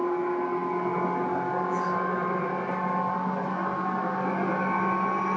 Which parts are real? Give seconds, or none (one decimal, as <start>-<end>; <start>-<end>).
0.0-5.4